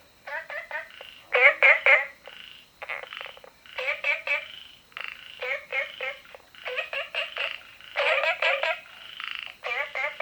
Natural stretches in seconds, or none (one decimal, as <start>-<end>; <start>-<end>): 0.0-7.7; 8.9-10.2